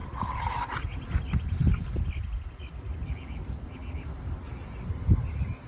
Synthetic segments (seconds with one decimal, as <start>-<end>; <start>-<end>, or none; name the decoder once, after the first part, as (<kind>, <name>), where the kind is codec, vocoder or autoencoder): none